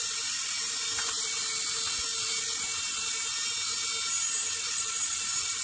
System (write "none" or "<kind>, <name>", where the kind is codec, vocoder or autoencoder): none